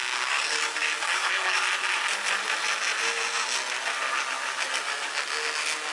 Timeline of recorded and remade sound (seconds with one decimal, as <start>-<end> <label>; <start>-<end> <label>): 0.0-1.6 remade; 1.6-5.9 recorded